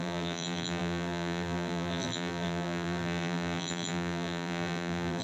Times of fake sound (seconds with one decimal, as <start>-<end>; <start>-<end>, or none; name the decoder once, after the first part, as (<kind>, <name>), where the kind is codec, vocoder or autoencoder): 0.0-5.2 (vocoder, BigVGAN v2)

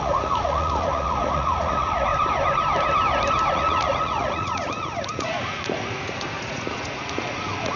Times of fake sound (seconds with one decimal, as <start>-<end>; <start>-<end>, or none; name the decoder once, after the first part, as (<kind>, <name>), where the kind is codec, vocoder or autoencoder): 0.0-2.1 (vocoder, Vocos); 3.5-7.8

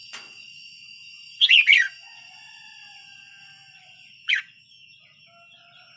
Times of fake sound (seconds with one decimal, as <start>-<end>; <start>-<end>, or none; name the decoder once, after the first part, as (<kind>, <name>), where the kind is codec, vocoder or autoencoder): 0.0-0.5 (vocoder, Vocos); 1.1-4.7